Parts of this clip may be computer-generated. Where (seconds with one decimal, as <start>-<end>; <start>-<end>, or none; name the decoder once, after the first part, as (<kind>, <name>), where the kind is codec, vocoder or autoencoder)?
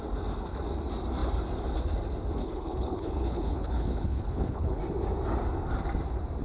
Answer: 2.4-4.8 (codec, HILCodec)